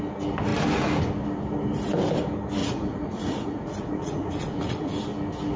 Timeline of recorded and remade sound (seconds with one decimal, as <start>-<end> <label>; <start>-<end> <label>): 0.0-2.6 recorded; 2.6-4.9 remade; 4.9-5.6 recorded